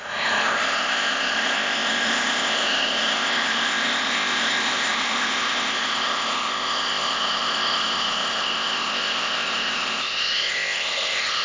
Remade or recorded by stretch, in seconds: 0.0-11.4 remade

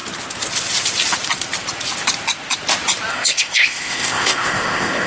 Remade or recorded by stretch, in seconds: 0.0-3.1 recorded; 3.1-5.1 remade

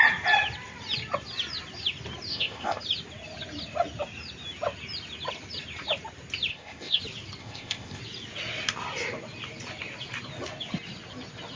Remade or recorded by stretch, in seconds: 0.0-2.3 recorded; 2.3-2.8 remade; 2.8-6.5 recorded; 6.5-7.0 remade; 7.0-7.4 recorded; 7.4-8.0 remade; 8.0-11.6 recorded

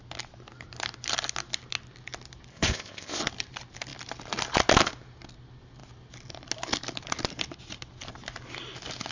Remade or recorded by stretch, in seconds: 0.0-2.5 recorded; 2.5-3.2 remade; 3.2-9.1 recorded

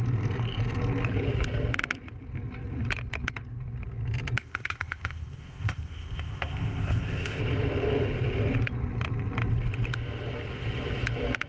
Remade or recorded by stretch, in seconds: 0.0-4.4 recorded; 4.4-7.4 remade; 7.4-11.5 recorded

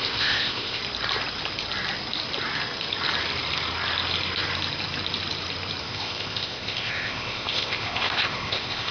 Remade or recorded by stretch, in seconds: 0.0-0.8 remade; 0.8-5.8 recorded; 5.8-8.9 remade

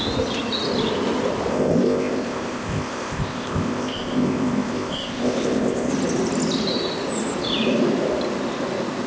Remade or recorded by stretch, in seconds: 0.0-1.5 recorded; 1.5-5.9 remade; 5.9-9.1 recorded

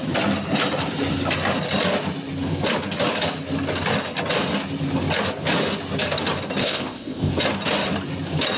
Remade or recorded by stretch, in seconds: 0.0-6.6 recorded; 6.6-7.3 remade; 7.3-8.6 recorded